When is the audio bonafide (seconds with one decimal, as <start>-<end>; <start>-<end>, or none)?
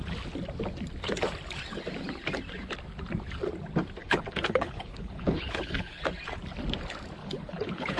0.0-4.0; 6.0-7.2